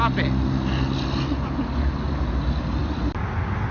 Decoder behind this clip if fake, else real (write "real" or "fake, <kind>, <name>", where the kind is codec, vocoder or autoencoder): real